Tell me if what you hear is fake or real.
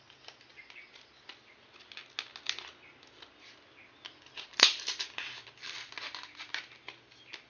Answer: real